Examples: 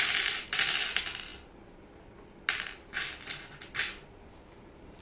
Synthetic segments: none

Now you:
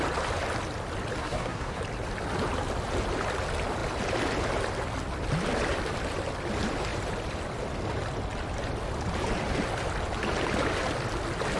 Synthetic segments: 1.2-1.8 (codec, SNAC)